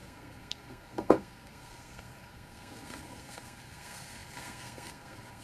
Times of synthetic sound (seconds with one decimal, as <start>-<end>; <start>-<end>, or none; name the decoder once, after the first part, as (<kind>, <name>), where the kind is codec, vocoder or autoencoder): 0.0-5.4 (codec, SNAC)